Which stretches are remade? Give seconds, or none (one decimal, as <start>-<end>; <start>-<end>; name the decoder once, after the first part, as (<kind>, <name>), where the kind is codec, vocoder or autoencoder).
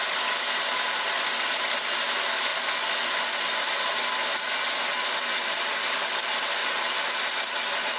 0.0-2.5 (vocoder, BigVGAN v2); 5.6-8.0